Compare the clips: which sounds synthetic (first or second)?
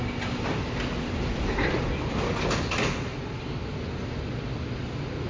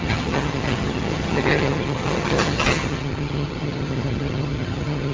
second